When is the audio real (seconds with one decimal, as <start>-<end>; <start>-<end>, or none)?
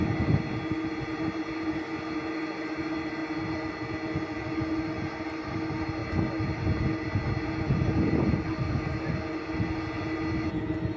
0.0-11.0